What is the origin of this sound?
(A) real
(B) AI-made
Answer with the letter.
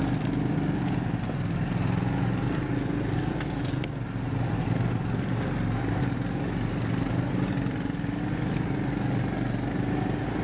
A